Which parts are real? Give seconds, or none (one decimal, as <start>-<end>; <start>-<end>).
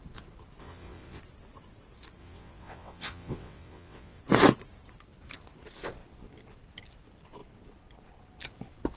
0.0-0.6; 1.2-2.2; 4.2-9.0